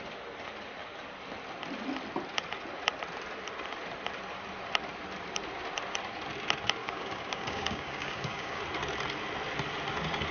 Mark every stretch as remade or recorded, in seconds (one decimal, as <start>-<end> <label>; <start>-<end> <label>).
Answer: 0.0-6.8 recorded; 6.8-8.6 remade; 8.6-10.3 recorded